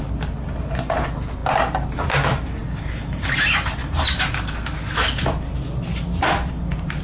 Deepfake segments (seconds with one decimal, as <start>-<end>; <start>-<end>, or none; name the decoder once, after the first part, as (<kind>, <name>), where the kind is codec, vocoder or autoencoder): none

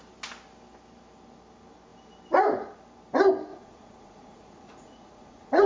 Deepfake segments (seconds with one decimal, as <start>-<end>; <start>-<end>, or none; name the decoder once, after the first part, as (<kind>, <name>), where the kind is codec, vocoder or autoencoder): 3.5-5.7 (vocoder, Vocos)